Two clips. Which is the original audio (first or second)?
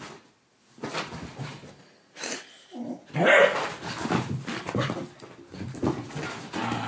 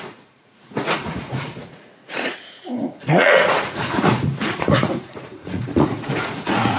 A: first